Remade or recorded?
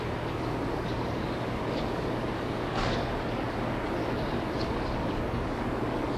remade